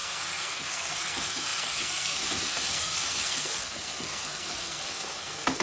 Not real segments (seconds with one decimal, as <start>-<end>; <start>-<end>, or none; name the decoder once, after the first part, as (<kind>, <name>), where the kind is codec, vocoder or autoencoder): 0.0-5.6 (codec, SNAC)